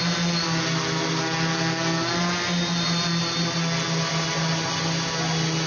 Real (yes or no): yes